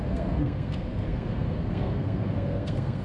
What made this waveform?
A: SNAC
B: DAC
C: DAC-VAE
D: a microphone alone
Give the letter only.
A